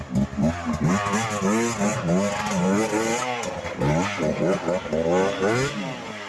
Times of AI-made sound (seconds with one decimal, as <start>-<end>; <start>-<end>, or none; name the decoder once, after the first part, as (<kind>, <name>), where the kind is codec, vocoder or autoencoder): none